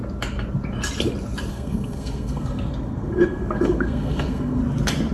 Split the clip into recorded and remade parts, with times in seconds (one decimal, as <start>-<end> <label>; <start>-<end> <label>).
0.0-1.5 recorded; 1.5-4.6 remade; 4.6-5.1 recorded